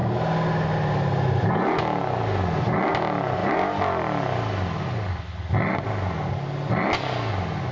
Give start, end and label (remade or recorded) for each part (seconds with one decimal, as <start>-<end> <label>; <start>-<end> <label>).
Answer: 0.0-7.7 recorded